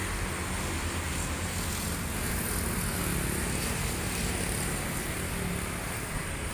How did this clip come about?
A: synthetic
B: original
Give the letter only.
B